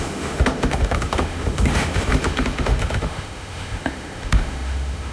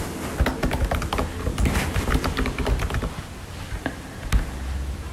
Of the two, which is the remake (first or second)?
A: first